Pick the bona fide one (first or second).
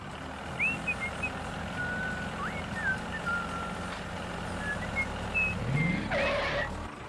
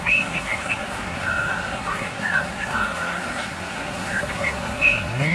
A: first